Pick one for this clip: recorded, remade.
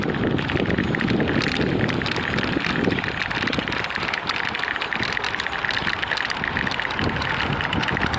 recorded